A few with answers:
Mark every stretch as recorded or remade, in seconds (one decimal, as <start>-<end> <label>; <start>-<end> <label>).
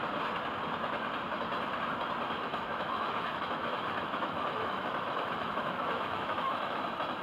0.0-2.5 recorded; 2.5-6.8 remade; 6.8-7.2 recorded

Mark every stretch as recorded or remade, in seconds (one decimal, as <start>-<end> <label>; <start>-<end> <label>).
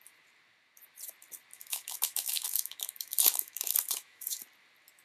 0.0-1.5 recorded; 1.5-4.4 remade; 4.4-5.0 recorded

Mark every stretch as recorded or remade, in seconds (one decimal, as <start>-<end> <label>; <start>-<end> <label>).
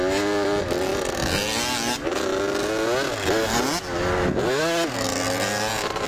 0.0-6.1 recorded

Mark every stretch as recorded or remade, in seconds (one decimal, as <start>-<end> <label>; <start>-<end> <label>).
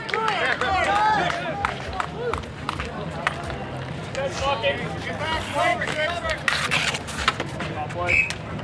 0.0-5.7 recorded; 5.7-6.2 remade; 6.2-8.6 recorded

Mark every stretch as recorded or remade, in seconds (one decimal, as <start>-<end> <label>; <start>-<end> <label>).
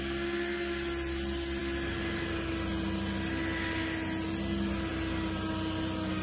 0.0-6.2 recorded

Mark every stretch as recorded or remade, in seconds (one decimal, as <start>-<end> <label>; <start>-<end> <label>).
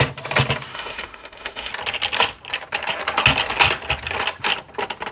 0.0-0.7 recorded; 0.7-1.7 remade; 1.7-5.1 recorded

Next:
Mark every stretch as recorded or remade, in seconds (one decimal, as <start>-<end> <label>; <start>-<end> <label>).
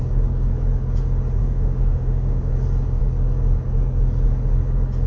0.0-1.4 recorded; 1.4-2.5 remade; 2.5-5.1 recorded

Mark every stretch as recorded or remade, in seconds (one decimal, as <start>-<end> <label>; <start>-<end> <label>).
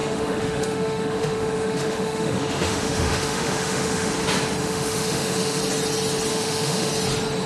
0.0-4.1 remade; 4.1-4.6 recorded; 4.6-5.6 remade; 5.6-6.3 recorded; 6.3-6.9 remade; 6.9-7.5 recorded